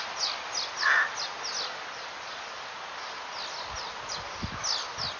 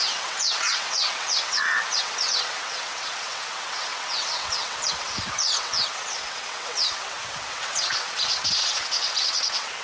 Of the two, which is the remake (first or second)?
second